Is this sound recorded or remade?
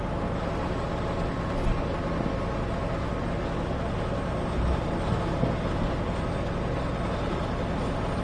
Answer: recorded